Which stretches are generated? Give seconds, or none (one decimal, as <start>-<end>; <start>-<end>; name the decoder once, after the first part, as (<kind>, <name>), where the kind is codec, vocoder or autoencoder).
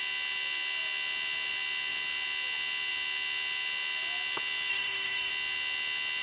4.7-5.3 (codec, SNAC)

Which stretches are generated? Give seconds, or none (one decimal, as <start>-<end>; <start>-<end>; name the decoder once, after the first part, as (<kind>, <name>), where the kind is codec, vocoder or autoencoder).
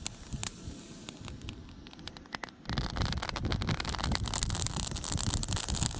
none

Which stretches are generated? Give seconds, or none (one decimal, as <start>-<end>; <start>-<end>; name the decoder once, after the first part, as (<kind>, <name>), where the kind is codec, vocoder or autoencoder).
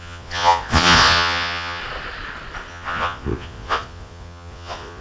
0.0-1.8 (vocoder, Vocos); 2.7-5.0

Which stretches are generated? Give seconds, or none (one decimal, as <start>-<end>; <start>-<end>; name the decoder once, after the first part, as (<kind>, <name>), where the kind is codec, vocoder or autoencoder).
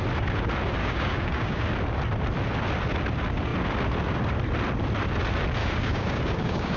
0.8-1.6 (codec, DAC); 5.6-6.8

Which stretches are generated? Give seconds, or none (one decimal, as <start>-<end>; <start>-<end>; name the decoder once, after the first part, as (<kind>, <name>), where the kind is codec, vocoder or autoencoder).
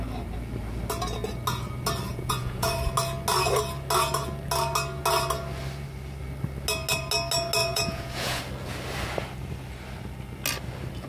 2.1-2.7 (vocoder, Vocos); 7.6-8.4